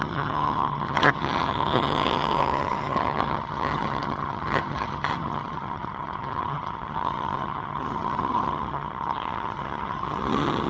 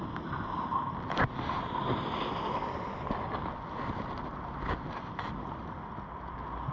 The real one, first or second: second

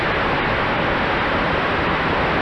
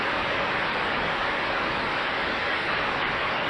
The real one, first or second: first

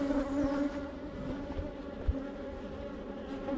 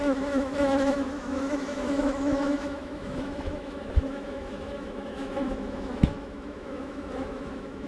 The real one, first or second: first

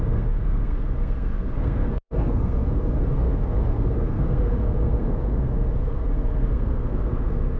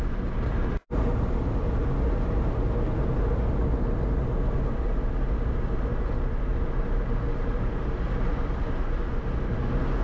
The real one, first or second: second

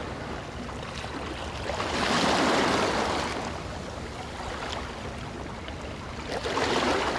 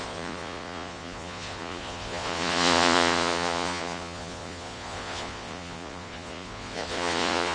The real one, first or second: first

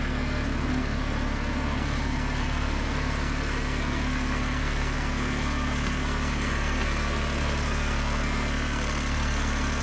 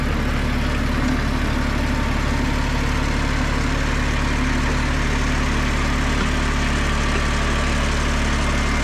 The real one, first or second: second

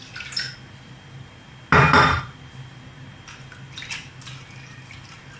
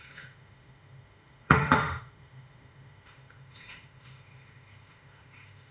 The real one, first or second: first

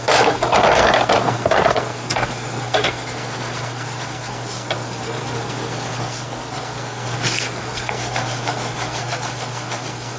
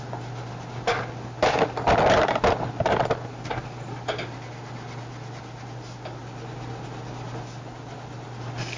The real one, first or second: second